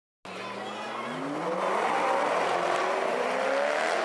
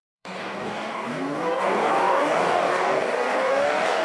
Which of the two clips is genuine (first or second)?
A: first